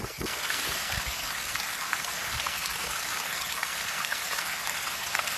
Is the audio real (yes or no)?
no